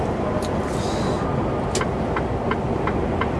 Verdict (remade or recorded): recorded